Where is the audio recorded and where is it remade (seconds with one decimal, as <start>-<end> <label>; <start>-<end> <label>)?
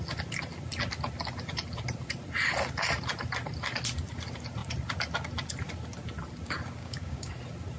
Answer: 0.0-6.8 recorded; 6.8-7.3 remade; 7.3-7.8 recorded